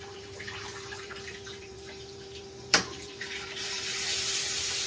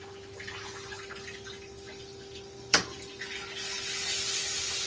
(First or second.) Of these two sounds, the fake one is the first